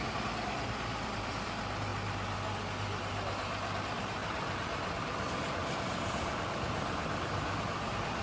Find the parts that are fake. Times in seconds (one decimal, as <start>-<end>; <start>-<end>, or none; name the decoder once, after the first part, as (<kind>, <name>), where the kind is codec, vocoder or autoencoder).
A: 0.0-1.9 (vocoder, BigVGAN v2); 3.8-8.2